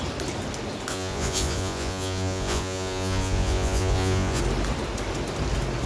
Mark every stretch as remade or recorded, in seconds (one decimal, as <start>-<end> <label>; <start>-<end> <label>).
0.0-0.9 recorded; 0.9-4.4 remade; 4.4-5.9 recorded